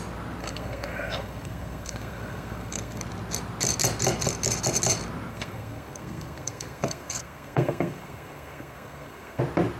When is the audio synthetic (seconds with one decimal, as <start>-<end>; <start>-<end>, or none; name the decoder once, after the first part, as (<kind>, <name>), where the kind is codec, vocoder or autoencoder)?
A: 0.4-3.0 (codec, SNAC); 5.3-9.4